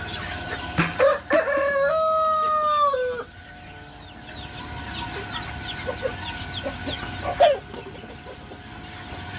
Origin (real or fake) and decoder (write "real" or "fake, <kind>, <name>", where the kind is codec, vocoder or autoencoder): real